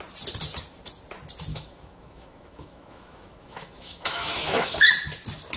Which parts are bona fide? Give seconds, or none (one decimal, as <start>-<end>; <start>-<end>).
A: 0.0-1.5; 4.9-5.6